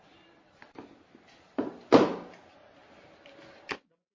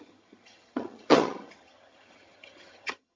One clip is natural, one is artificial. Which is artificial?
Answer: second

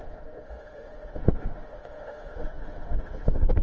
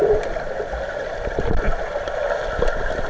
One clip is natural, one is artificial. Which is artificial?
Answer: first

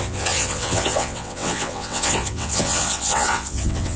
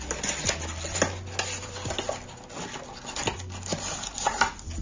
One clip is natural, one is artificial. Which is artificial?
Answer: first